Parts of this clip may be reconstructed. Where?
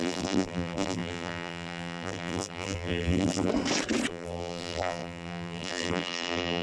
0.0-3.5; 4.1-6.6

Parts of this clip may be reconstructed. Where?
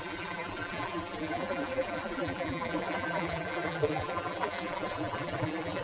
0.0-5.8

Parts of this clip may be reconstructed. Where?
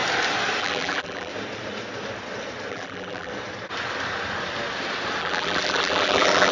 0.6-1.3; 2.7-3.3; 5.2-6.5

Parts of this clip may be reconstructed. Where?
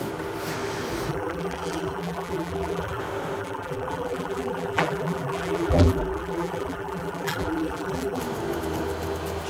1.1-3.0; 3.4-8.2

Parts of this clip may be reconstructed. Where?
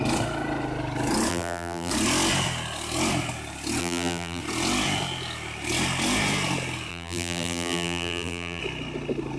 1.3-1.9; 3.8-4.4; 6.9-8.6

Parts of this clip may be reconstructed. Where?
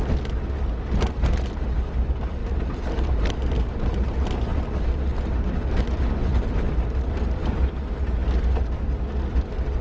2.4-3.3; 4.5-5.8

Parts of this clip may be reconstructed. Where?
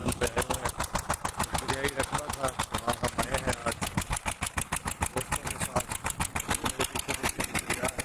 0.0-0.5; 3.6-8.0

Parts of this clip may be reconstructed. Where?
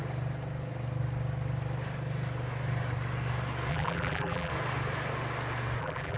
3.7-4.5; 5.8-6.2